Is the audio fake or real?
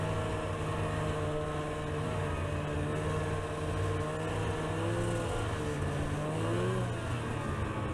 real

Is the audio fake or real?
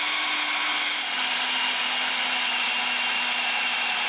real